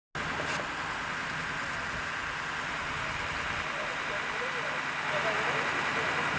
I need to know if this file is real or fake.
real